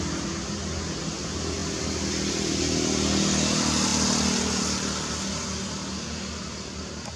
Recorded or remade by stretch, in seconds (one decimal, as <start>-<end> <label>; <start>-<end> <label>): 0.0-7.2 recorded